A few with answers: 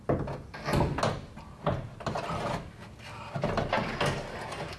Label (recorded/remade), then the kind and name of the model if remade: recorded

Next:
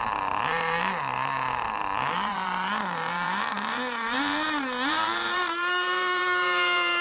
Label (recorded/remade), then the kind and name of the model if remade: remade, vocoder, BigVGAN v2